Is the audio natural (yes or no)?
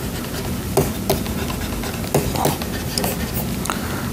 yes